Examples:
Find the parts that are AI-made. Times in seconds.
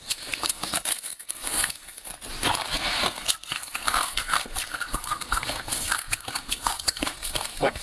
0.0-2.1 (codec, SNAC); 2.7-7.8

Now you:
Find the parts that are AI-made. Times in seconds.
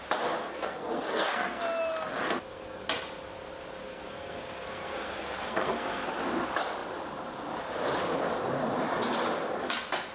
0.4-1.6 (codec, SNAC); 2.1-2.8; 3.8-6.2